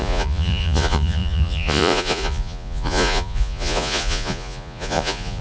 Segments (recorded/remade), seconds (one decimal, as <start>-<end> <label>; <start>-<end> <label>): 0.0-5.4 remade